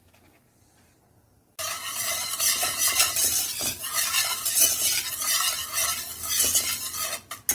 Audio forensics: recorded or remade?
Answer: recorded